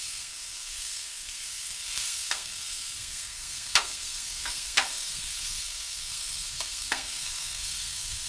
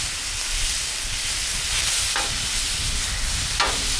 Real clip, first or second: second